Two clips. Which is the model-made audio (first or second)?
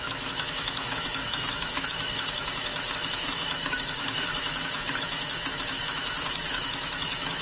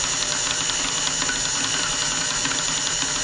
first